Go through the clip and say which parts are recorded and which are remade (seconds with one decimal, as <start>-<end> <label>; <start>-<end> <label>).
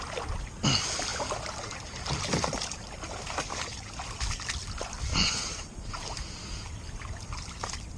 0.0-5.1 recorded; 5.1-5.9 remade; 5.9-8.0 recorded